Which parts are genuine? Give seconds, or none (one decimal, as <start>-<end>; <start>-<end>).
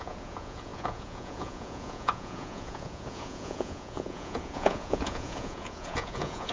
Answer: none